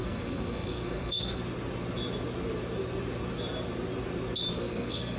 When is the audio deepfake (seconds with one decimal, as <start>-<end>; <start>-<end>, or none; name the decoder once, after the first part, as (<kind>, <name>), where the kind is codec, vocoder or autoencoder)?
0.0-1.4 (codec, SNAC); 4.5-5.2